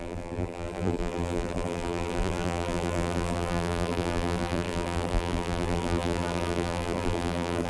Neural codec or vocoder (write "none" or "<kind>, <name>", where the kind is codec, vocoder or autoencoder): vocoder, BigVGAN v2